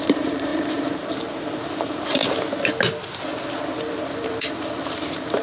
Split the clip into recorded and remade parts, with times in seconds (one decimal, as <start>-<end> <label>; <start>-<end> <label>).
0.0-2.2 remade; 2.2-3.8 recorded; 3.8-5.4 remade